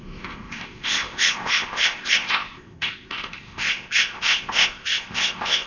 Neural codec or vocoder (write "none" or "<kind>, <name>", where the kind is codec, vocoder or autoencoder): codec, ZipCodec